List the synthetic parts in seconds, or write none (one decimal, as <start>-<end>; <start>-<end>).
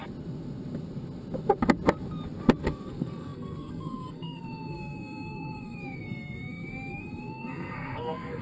2.6-8.4